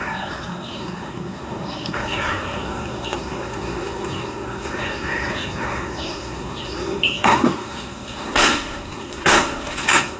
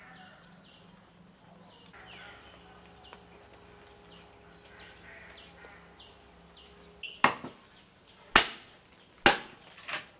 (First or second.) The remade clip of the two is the first